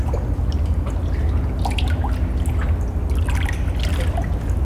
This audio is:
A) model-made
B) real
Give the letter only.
B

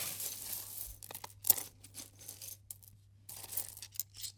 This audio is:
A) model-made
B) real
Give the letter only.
B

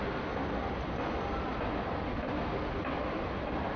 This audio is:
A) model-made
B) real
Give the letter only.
B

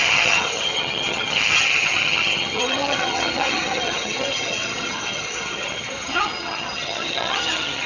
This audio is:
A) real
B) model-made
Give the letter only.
B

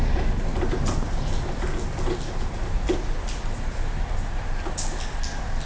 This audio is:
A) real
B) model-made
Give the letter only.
A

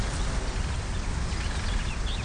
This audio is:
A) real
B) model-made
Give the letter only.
A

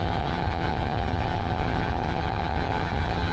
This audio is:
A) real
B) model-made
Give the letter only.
B